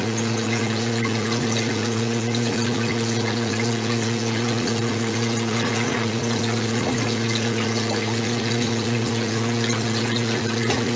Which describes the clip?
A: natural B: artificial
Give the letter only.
B